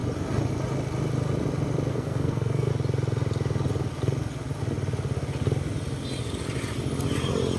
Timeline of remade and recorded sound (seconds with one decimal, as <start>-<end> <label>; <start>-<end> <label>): 0.0-1.9 recorded; 1.9-2.7 remade; 2.7-7.6 recorded